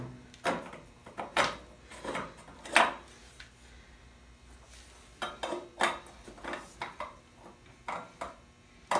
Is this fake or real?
real